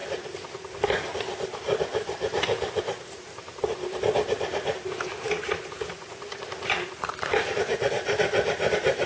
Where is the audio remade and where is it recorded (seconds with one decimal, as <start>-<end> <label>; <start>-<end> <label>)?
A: 0.0-9.1 remade